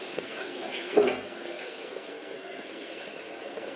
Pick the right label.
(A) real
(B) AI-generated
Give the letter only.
B